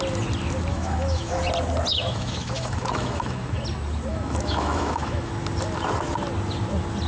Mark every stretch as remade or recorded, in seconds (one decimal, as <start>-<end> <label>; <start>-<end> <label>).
0.0-0.7 recorded; 0.7-1.4 remade; 1.4-1.9 recorded; 1.9-3.6 remade; 3.6-4.1 recorded; 4.1-5.3 remade; 5.3-7.1 recorded